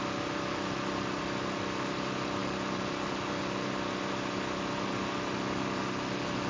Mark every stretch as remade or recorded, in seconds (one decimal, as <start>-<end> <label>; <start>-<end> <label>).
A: 0.0-6.5 recorded